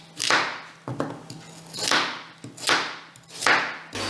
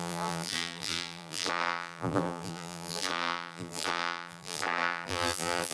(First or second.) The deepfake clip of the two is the second